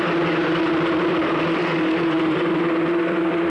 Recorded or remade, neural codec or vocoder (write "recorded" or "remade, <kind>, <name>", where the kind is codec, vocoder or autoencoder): remade, vocoder, BigVGAN v2